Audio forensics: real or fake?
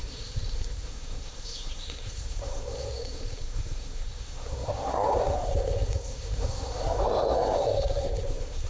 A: fake